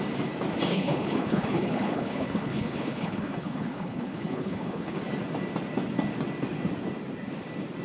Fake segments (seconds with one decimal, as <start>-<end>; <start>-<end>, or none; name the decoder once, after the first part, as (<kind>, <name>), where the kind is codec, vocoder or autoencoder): 0.7-5.0 (codec, HILCodec)